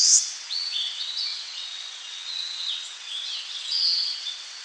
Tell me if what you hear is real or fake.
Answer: fake